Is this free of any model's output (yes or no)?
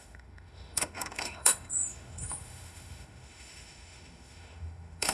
no